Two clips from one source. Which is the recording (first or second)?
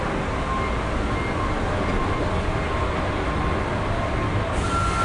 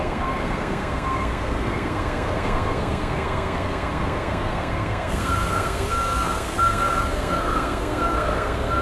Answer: first